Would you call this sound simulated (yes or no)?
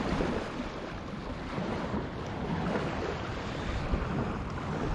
no